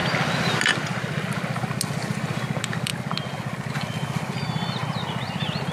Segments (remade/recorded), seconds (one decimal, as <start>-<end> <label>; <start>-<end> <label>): 0.0-5.7 recorded